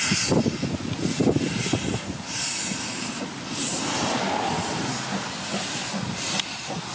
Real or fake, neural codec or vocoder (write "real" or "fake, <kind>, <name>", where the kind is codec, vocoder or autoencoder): real